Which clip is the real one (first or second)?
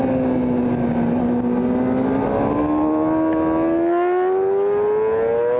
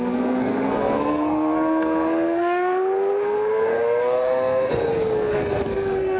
first